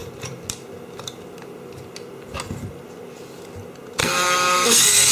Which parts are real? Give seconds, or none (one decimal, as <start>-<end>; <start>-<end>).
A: 0.0-4.0